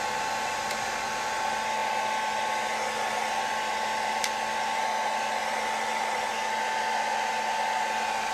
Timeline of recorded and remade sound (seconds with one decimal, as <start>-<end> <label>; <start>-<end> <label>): 0.0-8.3 recorded